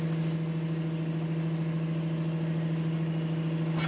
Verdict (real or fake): real